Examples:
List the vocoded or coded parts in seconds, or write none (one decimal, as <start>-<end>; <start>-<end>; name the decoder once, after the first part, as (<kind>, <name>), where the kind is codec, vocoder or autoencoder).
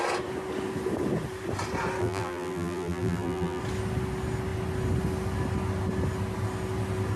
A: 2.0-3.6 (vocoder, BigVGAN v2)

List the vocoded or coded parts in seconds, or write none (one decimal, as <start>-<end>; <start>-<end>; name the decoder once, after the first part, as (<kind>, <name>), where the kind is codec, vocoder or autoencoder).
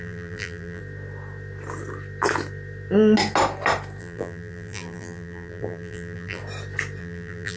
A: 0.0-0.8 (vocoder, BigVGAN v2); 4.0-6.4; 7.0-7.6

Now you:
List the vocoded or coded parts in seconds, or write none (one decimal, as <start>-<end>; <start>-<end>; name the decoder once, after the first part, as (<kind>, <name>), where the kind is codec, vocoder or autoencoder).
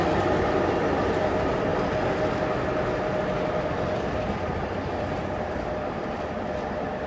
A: 0.0-1.7 (vocoder, BigVGAN v2); 3.6-7.1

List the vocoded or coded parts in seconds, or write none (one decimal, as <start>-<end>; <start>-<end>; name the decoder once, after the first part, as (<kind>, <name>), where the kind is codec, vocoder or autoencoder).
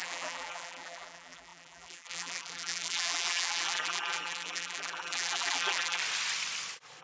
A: 0.0-6.0 (vocoder, BigVGAN v2)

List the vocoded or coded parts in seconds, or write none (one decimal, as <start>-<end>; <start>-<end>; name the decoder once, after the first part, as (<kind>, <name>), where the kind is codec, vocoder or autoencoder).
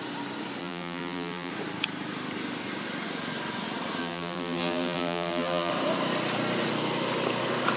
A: 0.6-1.5 (vocoder, BigVGAN v2); 4.0-5.7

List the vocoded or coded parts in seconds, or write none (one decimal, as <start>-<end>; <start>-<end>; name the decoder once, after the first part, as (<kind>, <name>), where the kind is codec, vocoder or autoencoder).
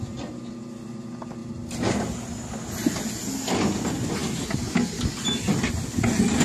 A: none